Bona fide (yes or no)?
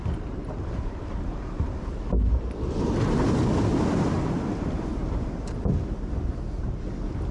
no